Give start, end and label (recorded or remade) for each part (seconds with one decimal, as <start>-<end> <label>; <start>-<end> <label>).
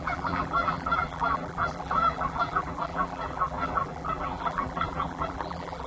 0.0-5.9 remade